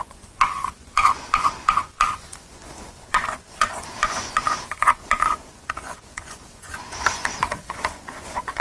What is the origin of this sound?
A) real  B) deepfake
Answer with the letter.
B